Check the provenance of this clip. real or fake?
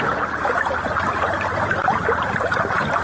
real